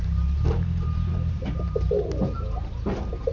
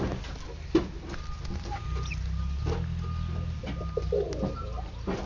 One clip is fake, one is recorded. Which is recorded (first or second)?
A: second